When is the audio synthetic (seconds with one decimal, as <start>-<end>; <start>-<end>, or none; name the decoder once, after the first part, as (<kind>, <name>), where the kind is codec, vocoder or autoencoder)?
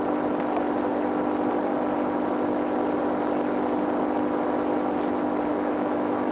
5.5-6.3 (autoencoder, DAC-VAE)